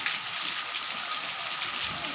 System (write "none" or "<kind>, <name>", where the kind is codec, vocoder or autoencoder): none